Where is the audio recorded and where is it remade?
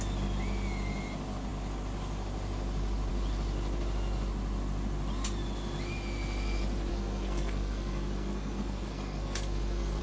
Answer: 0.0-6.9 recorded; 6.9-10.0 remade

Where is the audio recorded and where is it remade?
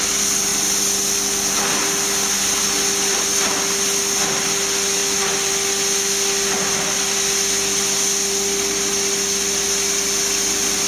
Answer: 0.0-10.9 recorded